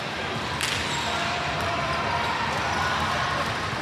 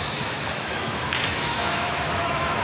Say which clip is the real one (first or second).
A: first